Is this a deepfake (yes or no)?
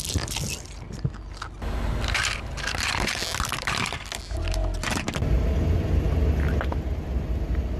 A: no